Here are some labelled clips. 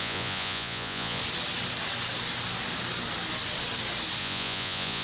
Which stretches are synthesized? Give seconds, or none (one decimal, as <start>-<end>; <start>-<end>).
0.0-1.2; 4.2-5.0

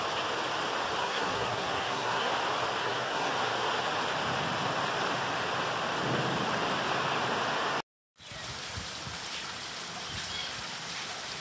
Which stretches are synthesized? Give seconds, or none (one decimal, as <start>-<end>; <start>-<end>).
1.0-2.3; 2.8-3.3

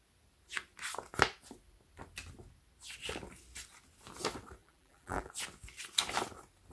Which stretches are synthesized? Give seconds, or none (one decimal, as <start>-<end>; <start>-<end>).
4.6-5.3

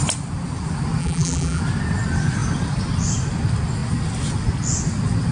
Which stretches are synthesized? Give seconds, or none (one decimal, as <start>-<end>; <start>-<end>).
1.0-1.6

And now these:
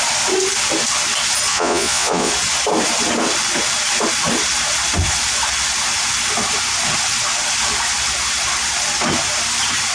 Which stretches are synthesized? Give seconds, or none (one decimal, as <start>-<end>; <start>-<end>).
1.5-2.3

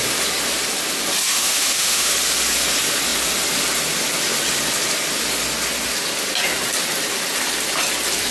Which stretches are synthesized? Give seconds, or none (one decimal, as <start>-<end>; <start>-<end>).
1.3-2.1